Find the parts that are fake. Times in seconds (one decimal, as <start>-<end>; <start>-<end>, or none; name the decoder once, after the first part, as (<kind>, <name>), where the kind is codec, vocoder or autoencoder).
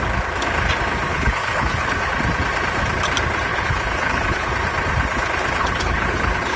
1.1-2.1 (codec, HILCodec); 3.5-4.5; 5.6-6.6